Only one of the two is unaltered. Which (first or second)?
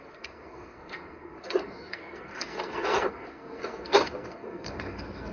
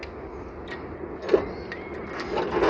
second